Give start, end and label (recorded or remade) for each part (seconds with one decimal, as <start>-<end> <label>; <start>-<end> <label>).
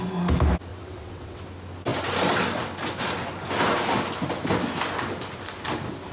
0.0-0.7 recorded; 0.7-1.4 remade; 1.4-6.1 recorded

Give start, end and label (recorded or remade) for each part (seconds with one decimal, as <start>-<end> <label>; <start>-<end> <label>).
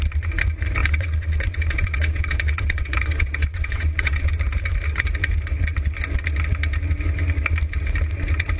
0.0-0.8 recorded; 0.8-4.3 remade; 4.3-8.6 recorded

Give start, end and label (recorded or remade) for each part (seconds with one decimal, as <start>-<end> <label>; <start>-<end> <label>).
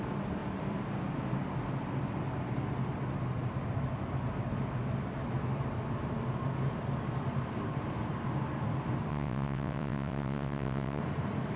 0.0-9.1 recorded; 9.1-11.0 remade; 11.0-11.6 recorded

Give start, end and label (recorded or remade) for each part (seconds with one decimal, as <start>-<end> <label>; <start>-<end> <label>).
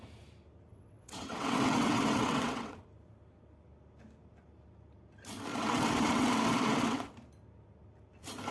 0.0-0.7 recorded; 0.7-2.8 remade; 2.8-5.5 recorded; 5.5-7.1 remade; 7.1-8.5 recorded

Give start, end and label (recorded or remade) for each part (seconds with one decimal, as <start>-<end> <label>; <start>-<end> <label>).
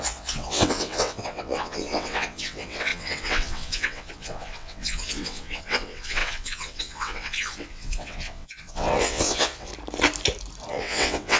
0.0-9.7 remade; 9.7-10.7 recorded; 10.7-11.4 remade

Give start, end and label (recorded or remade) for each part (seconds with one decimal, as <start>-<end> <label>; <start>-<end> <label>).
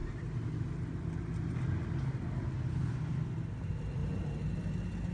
0.0-5.1 recorded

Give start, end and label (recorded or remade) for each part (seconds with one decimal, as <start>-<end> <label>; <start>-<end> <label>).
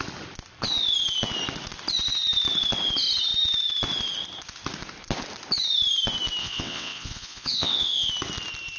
0.0-6.4 recorded; 6.4-8.1 remade; 8.1-8.8 recorded